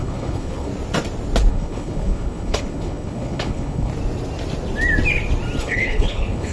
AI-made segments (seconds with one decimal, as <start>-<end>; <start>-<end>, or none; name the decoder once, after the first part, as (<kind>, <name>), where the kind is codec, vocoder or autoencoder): 0.0-0.7 (codec, HILCodec); 1.5-3.9; 5.6-6.5